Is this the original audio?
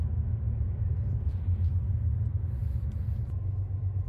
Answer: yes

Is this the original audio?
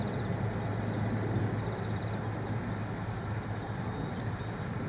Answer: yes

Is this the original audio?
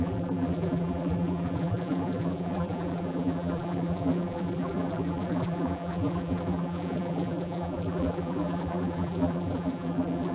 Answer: no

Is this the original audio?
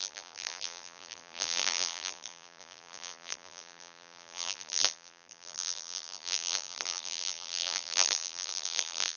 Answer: no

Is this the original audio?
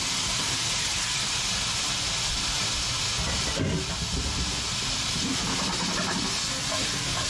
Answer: yes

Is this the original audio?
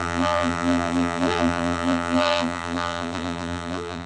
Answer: no